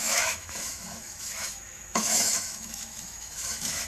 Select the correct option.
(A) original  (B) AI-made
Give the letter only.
B